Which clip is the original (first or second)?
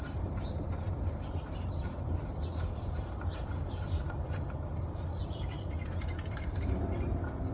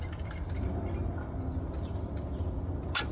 second